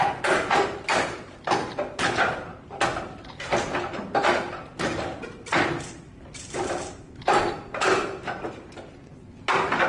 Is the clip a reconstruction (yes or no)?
no